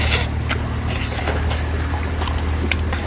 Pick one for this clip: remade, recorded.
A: recorded